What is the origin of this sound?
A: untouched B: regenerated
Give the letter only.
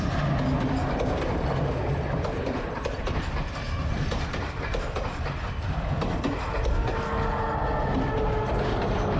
A